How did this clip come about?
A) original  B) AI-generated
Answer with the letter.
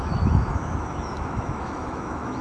B